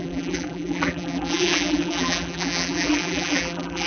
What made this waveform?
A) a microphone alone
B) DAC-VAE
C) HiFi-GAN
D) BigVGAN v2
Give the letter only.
D